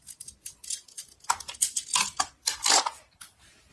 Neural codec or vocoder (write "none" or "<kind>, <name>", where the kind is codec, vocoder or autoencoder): none